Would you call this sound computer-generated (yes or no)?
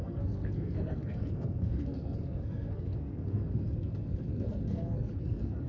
yes